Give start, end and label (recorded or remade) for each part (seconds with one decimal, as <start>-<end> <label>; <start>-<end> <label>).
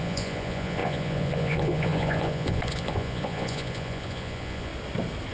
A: 0.0-4.7 remade; 4.7-5.3 recorded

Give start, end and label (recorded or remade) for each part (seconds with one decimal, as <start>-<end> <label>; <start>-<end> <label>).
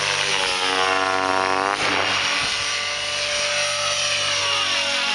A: 0.0-5.1 recorded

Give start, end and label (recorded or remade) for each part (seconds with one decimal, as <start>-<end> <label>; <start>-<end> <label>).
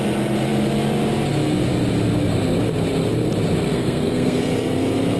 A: 0.0-3.7 recorded; 3.7-4.4 remade; 4.4-5.2 recorded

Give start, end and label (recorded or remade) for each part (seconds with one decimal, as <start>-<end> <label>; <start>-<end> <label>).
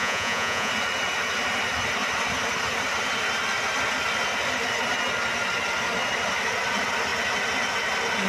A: 0.0-0.7 remade; 0.7-8.3 recorded